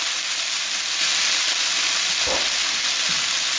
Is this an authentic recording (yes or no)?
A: yes